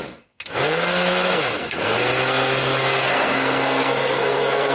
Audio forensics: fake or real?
fake